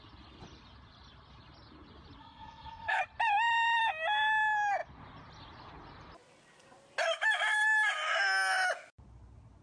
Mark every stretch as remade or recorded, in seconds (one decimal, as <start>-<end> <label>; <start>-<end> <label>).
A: 0.0-2.2 recorded; 2.2-3.0 remade; 3.0-9.6 recorded